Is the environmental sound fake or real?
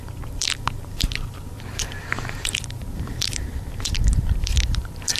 fake